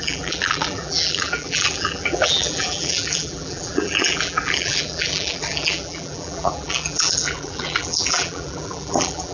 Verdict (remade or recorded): remade